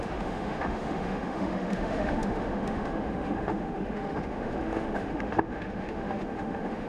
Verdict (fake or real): fake